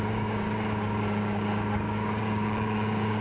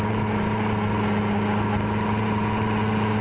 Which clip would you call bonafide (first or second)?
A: second